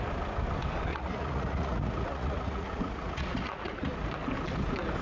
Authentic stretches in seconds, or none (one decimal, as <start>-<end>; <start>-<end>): 0.0-0.9; 3.9-5.0